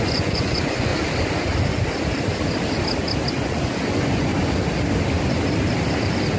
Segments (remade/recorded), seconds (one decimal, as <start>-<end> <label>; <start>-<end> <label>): 0.0-0.9 remade; 0.9-3.3 recorded; 3.3-4.3 remade; 4.3-6.4 recorded